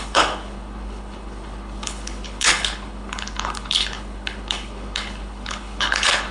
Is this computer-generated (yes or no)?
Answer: yes